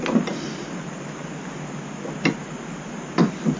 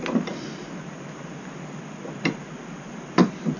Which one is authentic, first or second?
first